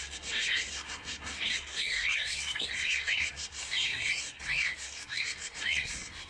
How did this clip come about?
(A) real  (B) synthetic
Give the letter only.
B